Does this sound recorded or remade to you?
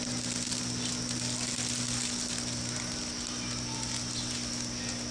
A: recorded